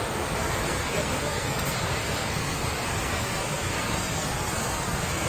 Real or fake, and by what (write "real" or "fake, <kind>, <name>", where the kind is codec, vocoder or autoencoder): fake, codec, SNAC